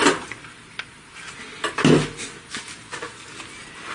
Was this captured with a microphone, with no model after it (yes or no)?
yes